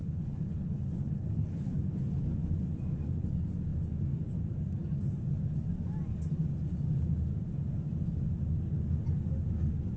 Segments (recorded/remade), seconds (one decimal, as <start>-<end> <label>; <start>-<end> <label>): 0.0-1.8 remade; 1.8-10.0 recorded

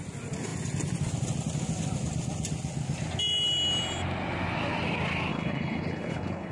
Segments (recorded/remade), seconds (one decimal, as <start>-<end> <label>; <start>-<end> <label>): 0.0-5.3 recorded; 5.3-6.5 remade